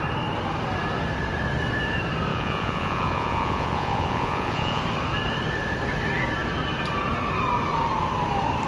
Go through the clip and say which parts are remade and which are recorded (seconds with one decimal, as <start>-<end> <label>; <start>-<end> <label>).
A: 0.0-2.3 recorded; 2.3-4.8 remade; 4.8-8.7 recorded